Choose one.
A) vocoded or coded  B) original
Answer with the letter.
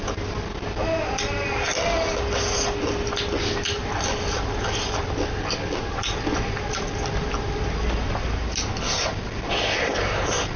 B